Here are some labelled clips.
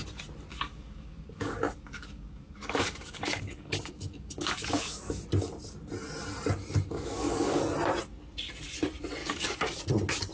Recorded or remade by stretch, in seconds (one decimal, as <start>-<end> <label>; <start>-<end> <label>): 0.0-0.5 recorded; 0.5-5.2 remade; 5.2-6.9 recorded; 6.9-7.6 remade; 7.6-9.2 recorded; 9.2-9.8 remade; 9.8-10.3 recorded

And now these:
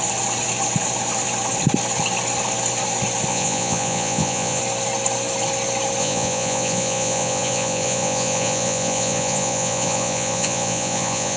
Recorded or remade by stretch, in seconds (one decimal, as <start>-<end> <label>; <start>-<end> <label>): 0.0-3.3 recorded; 3.3-4.6 remade; 4.6-6.0 recorded; 6.0-11.4 remade

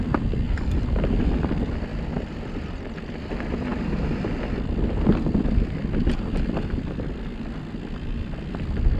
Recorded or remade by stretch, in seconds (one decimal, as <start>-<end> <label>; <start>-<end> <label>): 0.0-9.0 recorded